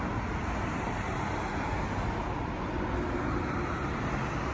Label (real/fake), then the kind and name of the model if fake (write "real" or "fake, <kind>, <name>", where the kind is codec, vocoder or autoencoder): real